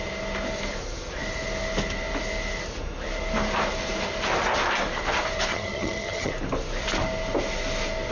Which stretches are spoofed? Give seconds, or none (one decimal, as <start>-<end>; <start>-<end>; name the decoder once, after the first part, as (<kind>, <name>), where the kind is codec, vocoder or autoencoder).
5.5-6.3 (vocoder, HiFi-GAN)